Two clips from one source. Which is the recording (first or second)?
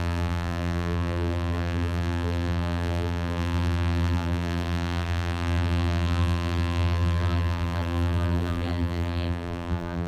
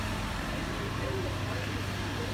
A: second